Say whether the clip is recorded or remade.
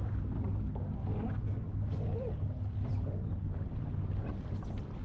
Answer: recorded